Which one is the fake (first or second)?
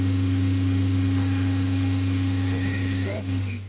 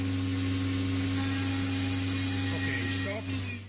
first